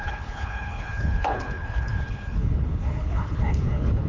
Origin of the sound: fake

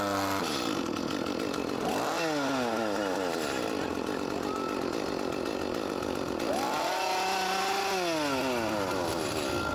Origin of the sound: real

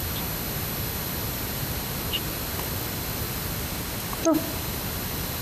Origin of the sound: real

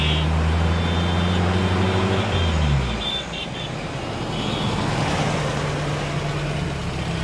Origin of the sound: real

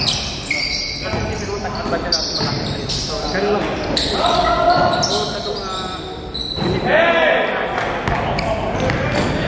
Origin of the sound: real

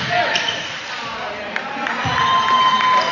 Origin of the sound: real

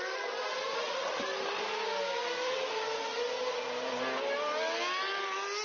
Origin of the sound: real